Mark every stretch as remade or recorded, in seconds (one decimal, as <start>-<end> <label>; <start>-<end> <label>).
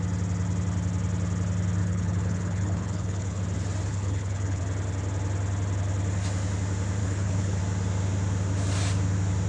0.0-1.8 recorded; 1.8-3.4 remade; 3.4-3.9 recorded; 3.9-4.6 remade; 4.6-7.0 recorded; 7.0-7.6 remade; 7.6-9.5 recorded